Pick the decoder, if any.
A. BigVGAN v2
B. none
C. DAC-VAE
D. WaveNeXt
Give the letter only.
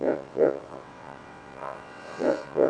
D